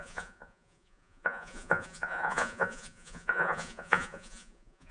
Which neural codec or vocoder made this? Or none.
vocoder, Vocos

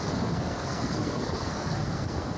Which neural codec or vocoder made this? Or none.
codec, SNAC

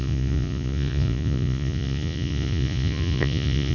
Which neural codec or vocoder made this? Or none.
vocoder, Vocos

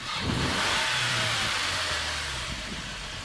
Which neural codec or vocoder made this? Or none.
vocoder, BigVGAN v2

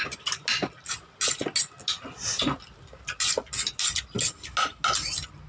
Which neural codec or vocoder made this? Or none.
none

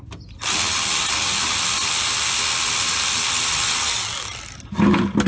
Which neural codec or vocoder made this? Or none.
none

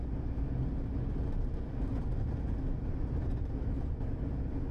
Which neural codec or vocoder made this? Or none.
none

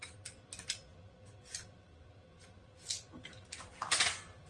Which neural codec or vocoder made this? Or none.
none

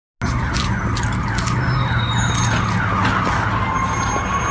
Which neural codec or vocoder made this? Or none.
none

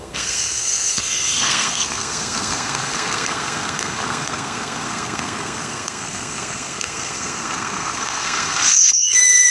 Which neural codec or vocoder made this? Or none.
codec, SNAC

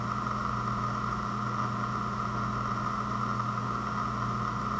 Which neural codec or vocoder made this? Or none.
none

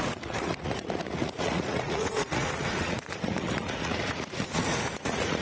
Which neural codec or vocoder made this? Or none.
vocoder, Vocos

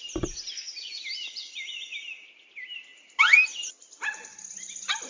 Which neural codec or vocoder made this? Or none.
none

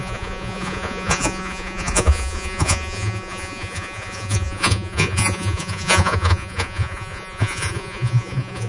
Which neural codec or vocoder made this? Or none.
vocoder, Vocos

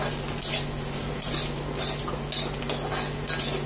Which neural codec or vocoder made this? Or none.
none